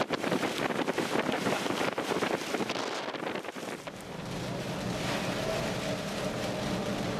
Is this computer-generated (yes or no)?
no